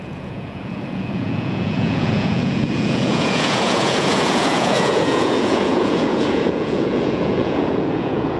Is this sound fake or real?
fake